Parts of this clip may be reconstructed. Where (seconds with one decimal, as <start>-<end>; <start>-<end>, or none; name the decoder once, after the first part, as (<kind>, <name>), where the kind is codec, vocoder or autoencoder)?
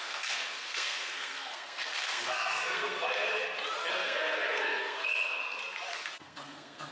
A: 0.0-3.3 (codec, SNAC); 3.9-5.4; 6.1-6.9